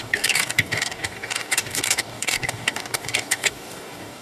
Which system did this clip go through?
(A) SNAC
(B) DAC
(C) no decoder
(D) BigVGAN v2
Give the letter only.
B